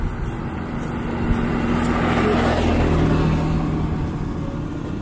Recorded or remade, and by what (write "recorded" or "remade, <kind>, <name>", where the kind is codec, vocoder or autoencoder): recorded